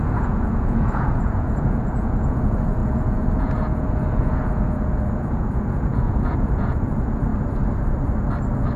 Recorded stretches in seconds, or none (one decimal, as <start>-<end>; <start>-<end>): 7.3-8.8